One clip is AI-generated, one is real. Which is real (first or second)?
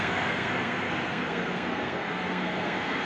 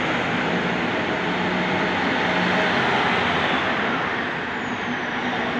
second